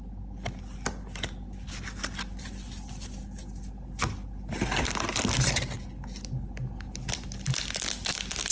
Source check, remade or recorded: recorded